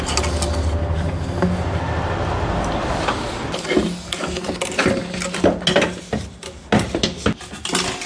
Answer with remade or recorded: recorded